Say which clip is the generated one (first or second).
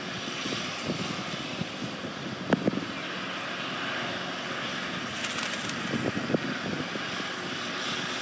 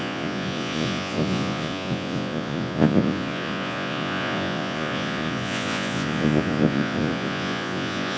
second